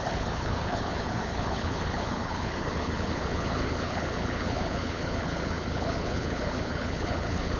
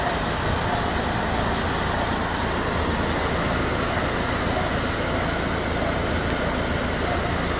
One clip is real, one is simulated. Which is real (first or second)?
second